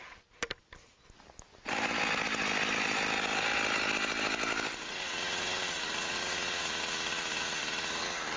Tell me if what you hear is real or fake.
real